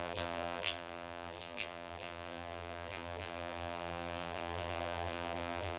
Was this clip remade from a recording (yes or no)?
yes